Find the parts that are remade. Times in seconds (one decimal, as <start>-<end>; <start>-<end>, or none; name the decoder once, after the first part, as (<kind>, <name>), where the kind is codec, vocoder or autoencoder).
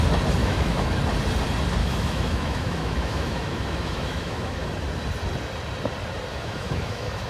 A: 0.4-1.0 (autoencoder, DAC-VAE); 1.8-4.7; 6.3-7.3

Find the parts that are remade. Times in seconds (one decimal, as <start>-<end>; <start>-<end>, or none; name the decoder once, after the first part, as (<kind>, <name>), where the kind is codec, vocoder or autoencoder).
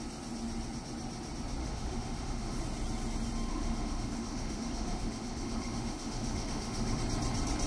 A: 1.6-2.6 (autoencoder, DAC-VAE); 3.5-7.0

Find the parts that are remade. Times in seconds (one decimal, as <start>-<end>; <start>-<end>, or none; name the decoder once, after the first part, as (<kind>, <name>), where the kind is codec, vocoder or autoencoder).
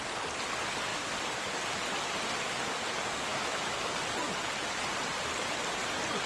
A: 3.3-3.9 (autoencoder, DAC-VAE)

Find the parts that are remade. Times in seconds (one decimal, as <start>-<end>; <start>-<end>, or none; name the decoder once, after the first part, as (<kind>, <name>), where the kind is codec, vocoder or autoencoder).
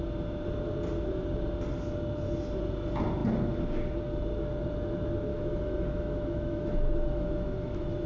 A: 5.3-8.1 (autoencoder, DAC-VAE)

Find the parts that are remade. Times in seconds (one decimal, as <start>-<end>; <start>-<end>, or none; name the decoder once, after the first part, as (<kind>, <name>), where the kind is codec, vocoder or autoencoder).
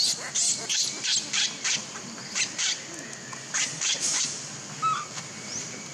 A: none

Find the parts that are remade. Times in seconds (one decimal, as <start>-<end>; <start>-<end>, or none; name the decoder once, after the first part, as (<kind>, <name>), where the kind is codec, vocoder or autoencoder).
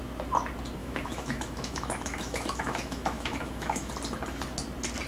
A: 0.8-3.9 (autoencoder, DAC-VAE)